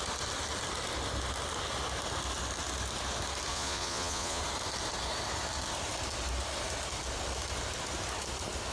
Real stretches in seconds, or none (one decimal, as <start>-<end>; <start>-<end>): 0.0-3.5; 4.4-8.7